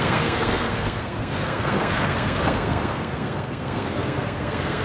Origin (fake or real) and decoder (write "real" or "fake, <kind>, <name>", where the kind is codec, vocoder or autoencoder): fake, codec, SNAC